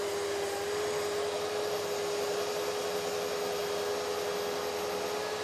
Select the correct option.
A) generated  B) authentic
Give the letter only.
B